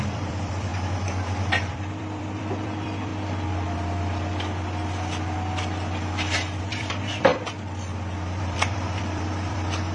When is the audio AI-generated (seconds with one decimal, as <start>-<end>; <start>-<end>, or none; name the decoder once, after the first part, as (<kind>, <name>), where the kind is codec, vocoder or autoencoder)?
0.0-0.7 (vocoder, BigVGAN v2); 1.7-3.1; 6.6-7.3; 8.4-9.9